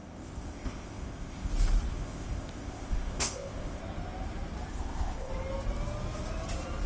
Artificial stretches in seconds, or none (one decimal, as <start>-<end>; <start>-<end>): 0.0-1.5; 1.9-3.8; 4.7-5.3